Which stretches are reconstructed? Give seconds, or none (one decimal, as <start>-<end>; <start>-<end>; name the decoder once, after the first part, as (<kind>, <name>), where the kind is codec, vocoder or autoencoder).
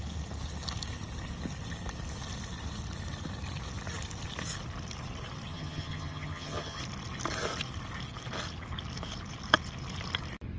5.5-6.8 (vocoder, HiFi-GAN)